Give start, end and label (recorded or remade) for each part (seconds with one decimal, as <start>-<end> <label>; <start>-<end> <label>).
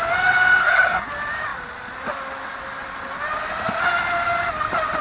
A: 0.0-0.6 recorded; 0.6-1.1 remade; 1.1-5.0 recorded